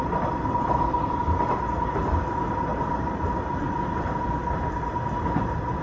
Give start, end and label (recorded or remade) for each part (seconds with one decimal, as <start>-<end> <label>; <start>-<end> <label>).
0.0-2.7 recorded; 2.7-4.2 remade; 4.2-5.8 recorded